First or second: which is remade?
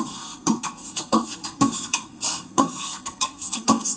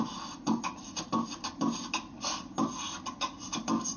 first